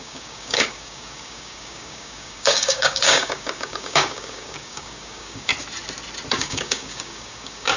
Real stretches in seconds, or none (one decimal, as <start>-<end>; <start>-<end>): 5.5-6.3